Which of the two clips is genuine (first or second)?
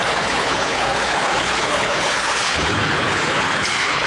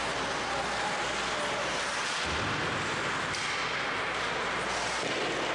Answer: second